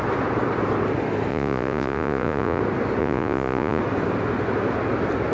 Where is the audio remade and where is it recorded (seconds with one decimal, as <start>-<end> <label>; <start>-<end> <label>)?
0.0-1.3 recorded; 1.3-2.6 remade; 2.6-3.0 recorded; 3.0-3.8 remade; 3.8-5.3 recorded